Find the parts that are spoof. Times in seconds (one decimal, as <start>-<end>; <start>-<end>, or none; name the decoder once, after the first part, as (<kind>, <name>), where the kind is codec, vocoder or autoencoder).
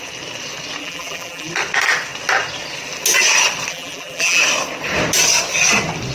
0.8-1.5 (vocoder, BigVGAN v2); 3.7-4.4